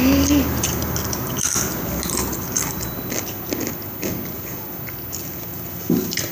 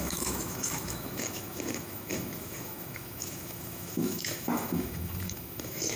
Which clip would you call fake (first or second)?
second